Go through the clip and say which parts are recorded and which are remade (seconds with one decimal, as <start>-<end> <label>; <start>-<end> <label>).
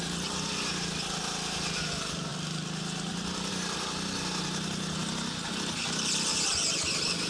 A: 0.0-2.3 recorded; 2.3-3.5 remade; 3.5-7.3 recorded